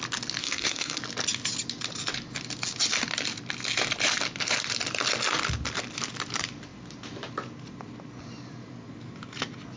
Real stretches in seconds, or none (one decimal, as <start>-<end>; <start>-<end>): 0.0-0.4; 1.0-9.8